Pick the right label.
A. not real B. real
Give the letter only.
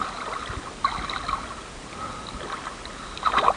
B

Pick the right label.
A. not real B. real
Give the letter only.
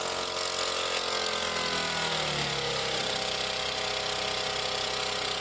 B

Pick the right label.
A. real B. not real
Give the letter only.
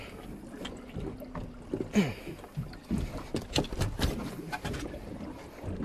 A